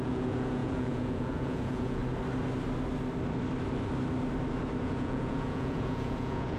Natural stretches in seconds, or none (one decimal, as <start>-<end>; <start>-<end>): 2.0-4.8